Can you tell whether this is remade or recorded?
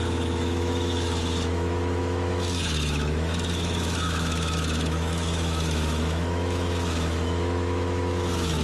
remade